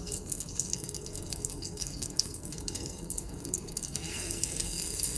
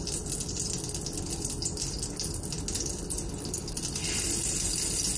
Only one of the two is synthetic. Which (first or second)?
first